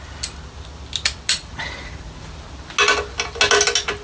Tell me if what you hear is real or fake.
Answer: real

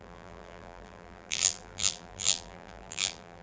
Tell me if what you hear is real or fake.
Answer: fake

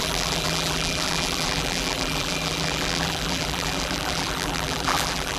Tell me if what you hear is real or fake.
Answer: fake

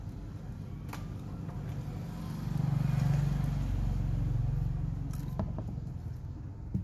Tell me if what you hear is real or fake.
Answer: real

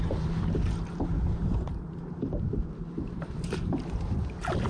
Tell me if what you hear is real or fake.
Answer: fake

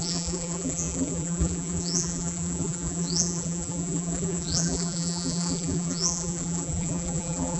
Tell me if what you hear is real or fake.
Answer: fake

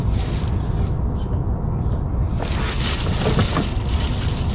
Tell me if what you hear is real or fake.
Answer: real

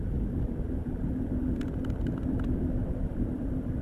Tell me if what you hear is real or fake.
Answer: real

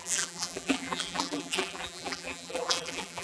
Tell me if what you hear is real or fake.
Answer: fake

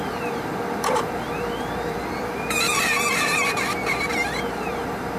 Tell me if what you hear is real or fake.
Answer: fake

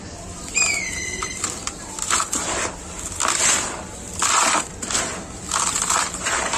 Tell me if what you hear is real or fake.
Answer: fake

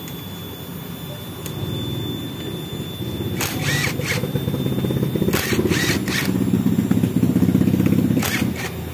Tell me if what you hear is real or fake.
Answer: real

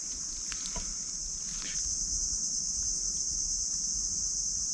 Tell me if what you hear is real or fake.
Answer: real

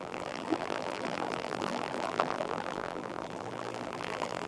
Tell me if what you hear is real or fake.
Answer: fake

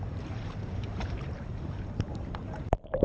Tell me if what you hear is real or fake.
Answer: fake